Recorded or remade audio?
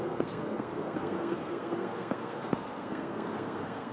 remade